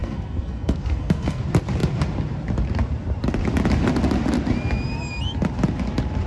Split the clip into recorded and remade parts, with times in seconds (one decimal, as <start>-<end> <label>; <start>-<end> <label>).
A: 0.0-1.4 remade; 1.4-6.3 recorded

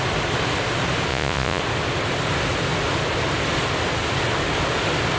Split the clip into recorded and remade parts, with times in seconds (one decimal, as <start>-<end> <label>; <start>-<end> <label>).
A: 0.0-1.1 recorded; 1.1-1.6 remade; 1.6-5.2 recorded

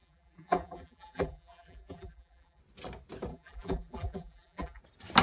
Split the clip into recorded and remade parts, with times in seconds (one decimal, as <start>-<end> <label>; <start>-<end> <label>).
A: 0.0-2.6 remade; 2.6-3.3 recorded; 3.3-4.8 remade; 4.8-5.2 recorded

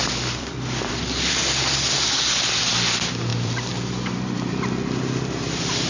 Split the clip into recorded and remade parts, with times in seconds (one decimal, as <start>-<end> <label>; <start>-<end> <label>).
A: 0.0-0.9 remade; 0.9-1.4 recorded; 1.4-2.4 remade; 2.4-3.3 recorded; 3.3-4.5 remade; 4.5-5.9 recorded

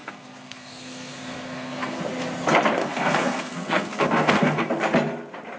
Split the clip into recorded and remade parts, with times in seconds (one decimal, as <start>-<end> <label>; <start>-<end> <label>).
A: 0.0-2.0 remade; 2.0-2.8 recorded; 2.8-4.7 remade; 4.7-5.6 recorded